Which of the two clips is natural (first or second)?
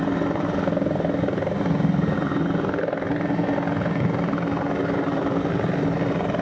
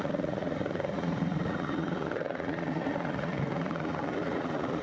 first